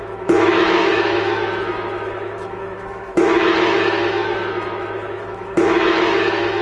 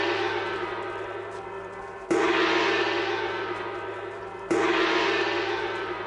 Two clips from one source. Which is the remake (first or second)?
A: first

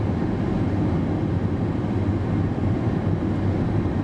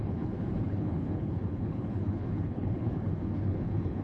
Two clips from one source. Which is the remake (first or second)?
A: second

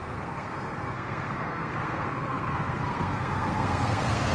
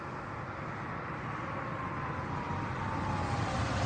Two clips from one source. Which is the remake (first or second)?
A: first